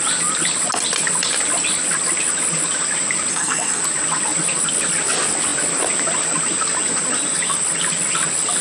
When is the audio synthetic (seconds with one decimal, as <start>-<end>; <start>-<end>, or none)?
3.3-3.8